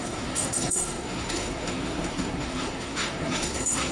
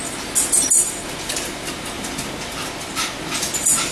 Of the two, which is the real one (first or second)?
second